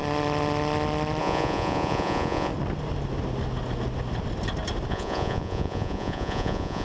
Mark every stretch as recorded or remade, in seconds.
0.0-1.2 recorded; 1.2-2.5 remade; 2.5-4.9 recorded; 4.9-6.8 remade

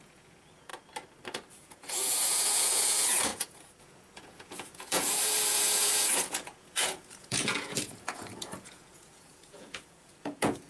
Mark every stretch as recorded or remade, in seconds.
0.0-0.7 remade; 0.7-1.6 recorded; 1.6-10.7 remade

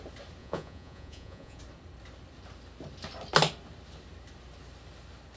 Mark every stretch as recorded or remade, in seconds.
0.0-0.4 recorded; 0.4-1.6 remade; 1.6-5.4 recorded